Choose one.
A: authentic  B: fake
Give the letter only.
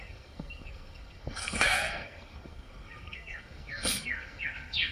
B